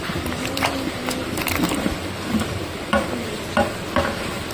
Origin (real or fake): fake